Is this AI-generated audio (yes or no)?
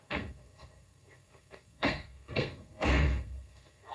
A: yes